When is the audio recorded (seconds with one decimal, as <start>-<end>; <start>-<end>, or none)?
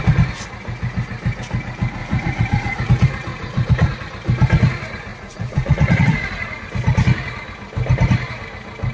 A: 0.0-2.0; 2.9-3.3; 4.0-5.1; 6.1-8.9